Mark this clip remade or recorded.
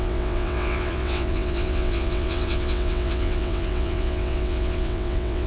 remade